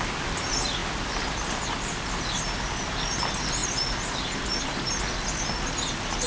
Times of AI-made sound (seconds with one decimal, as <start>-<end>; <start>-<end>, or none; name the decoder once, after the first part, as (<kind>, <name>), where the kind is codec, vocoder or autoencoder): none